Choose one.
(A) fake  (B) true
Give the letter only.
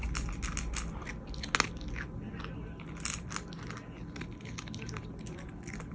B